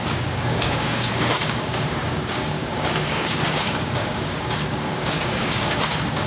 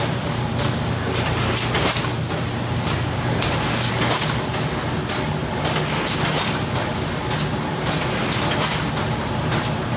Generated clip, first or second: first